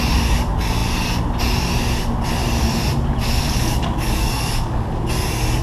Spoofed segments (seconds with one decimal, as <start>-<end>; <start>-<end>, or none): 3.4-4.9